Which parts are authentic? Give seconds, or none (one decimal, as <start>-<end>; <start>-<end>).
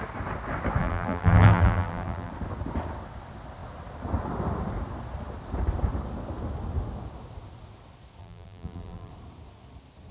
0.0-0.8; 2.3-8.2; 9.1-10.1